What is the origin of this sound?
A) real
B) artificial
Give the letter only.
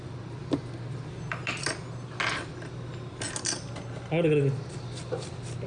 A